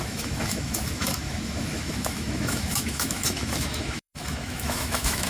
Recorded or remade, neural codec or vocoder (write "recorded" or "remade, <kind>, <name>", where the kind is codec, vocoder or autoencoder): remade, autoencoder, DAC-VAE